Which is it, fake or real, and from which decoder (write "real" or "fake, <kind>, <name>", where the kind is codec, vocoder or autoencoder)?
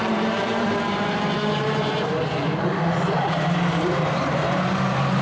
fake, vocoder, BigVGAN v2